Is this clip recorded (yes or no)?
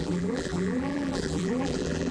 no